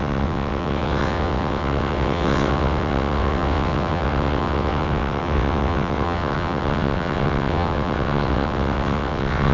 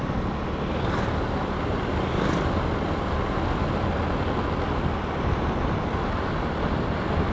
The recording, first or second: second